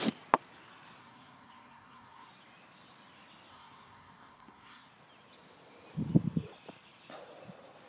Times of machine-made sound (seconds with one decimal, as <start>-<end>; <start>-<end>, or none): 1.0-2.3; 3.5-4.9